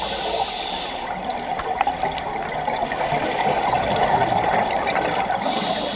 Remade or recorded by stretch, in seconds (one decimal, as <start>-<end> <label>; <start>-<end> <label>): 0.0-6.0 recorded